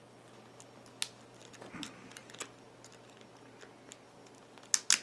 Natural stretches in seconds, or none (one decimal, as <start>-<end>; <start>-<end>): 0.0-5.0